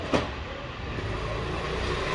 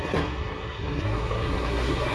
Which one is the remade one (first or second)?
second